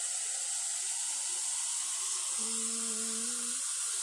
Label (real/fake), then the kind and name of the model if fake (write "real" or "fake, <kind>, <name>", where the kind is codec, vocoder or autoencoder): real